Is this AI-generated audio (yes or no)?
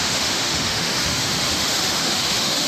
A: yes